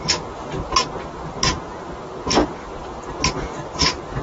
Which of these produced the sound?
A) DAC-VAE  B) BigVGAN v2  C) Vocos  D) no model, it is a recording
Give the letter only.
D